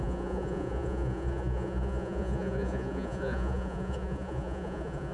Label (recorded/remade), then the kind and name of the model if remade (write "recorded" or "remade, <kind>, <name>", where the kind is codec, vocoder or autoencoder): remade, vocoder, Vocos